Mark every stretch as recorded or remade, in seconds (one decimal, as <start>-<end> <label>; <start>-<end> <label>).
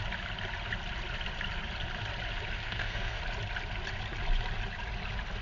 0.0-2.6 recorded; 2.6-3.2 remade; 3.2-5.4 recorded